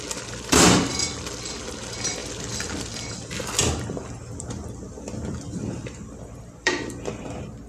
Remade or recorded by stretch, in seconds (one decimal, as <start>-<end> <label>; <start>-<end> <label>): 0.0-7.7 remade